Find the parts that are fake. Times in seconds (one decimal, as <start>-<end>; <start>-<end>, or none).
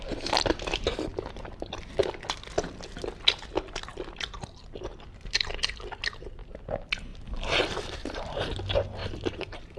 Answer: 7.1-8.5; 9.0-9.8